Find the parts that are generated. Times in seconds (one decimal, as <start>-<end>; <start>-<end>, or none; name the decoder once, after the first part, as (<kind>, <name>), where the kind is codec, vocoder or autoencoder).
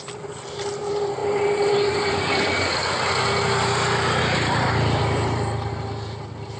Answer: 0.0-1.2 (vocoder, BigVGAN v2); 2.0-2.8; 4.2-6.6